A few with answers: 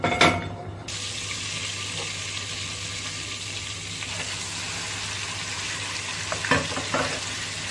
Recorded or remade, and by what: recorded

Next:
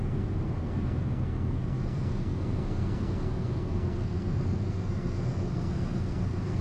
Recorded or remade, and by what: remade, codec, SNAC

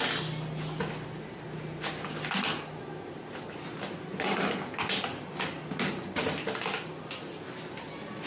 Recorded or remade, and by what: recorded